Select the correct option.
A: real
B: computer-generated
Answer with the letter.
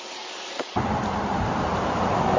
B